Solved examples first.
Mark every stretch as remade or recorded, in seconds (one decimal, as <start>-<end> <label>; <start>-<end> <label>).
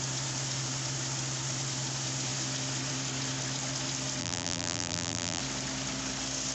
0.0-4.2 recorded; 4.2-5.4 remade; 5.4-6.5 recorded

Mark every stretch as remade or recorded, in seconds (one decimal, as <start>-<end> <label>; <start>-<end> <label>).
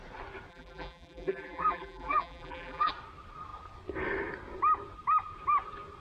0.0-0.5 recorded; 0.5-2.9 remade; 2.9-6.0 recorded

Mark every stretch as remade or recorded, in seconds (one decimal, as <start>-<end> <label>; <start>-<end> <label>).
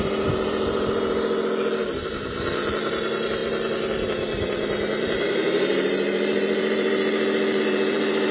0.0-1.8 remade; 1.8-2.7 recorded; 2.7-8.3 remade